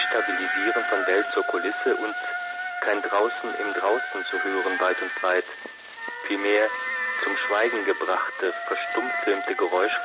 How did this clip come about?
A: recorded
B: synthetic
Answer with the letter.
A